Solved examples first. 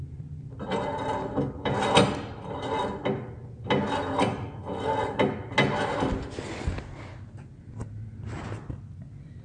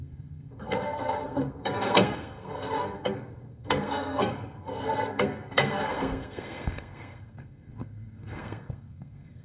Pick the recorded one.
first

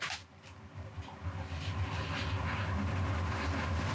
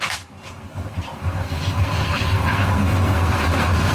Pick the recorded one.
first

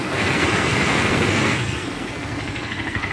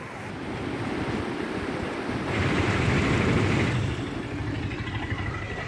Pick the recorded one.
second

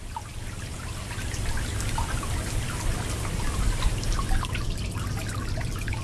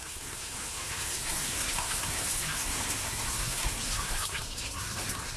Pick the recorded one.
first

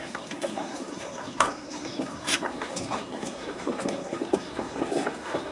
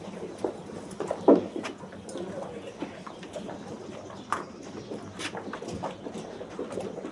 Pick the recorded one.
second